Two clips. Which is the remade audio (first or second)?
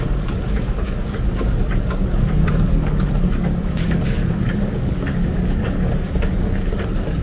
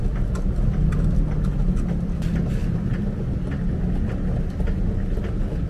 first